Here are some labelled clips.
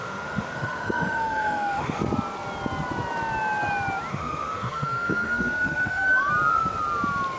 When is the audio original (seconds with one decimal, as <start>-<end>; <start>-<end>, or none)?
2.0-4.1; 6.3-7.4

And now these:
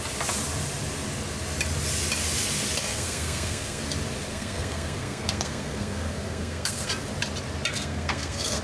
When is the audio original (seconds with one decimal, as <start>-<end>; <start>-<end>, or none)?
0.0-2.9; 3.8-4.3; 6.9-7.7

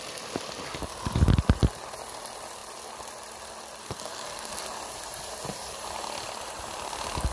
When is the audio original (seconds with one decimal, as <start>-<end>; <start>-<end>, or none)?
0.0-3.8; 4.5-7.3

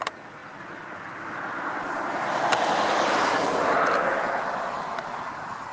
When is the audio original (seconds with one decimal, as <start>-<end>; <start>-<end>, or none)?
0.0-0.4; 3.1-5.7